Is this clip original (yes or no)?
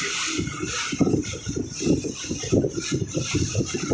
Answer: yes